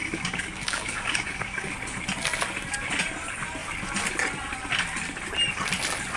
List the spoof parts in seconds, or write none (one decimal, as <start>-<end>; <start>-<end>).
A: 0.0-1.7